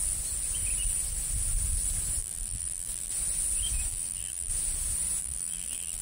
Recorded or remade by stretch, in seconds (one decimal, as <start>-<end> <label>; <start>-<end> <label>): 0.0-2.2 recorded; 2.2-3.1 remade; 3.1-3.9 recorded; 3.9-4.5 remade; 4.5-5.2 recorded; 5.2-6.0 remade